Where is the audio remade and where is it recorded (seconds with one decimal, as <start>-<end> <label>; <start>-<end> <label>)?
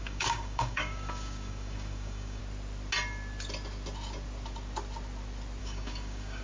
0.0-2.4 remade; 2.4-5.6 recorded; 5.6-6.4 remade